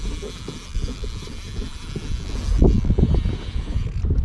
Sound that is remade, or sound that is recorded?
recorded